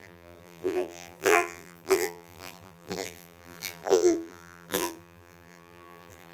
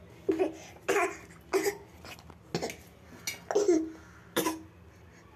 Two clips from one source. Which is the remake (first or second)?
first